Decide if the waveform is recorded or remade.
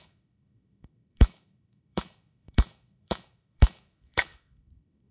remade